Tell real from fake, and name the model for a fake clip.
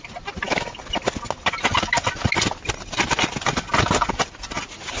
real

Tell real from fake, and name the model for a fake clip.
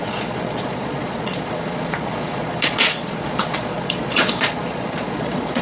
fake, vocoder, Vocos